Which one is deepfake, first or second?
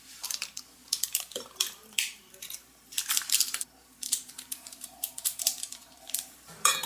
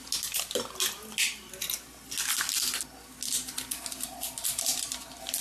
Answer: first